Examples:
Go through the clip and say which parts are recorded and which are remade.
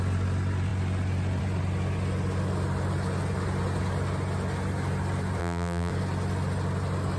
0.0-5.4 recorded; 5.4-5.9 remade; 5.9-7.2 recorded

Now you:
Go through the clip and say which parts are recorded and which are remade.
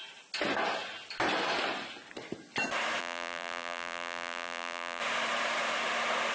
0.0-3.0 recorded; 3.0-5.0 remade; 5.0-6.3 recorded